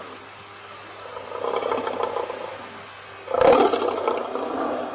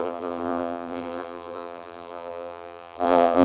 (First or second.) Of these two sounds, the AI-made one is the second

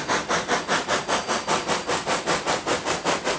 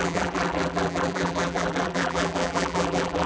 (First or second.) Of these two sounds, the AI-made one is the second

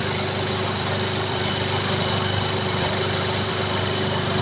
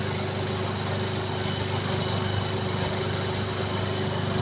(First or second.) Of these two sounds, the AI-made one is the first